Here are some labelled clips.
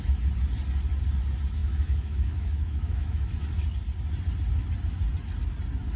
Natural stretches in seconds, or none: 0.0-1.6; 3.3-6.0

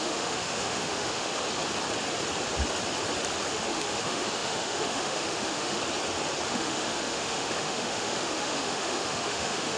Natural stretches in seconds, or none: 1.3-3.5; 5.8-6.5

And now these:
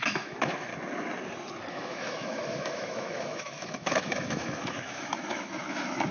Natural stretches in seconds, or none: 0.7-1.7

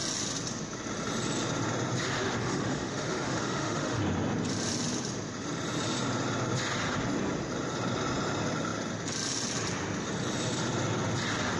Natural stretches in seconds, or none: 0.0-2.4; 4.0-11.6

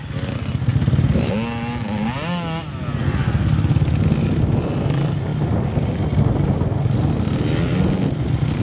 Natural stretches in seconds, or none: 0.0-8.6

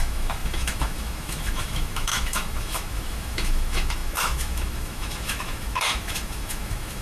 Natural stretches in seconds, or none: none

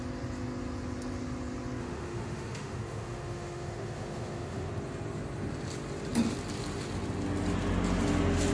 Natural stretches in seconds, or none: 0.0-1.8; 4.7-8.5

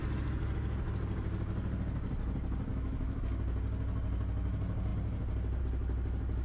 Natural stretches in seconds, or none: 0.0-2.7; 3.2-6.4